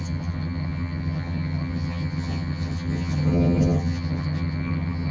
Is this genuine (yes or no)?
no